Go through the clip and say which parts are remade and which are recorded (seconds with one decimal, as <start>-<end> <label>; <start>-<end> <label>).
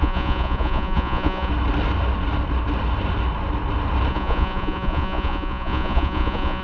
0.0-1.5 remade; 1.5-4.1 recorded; 4.1-6.6 remade